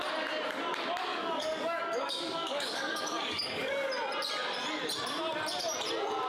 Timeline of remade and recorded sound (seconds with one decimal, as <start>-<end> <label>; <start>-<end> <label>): 0.0-1.1 recorded; 1.1-3.9 remade; 3.9-6.3 recorded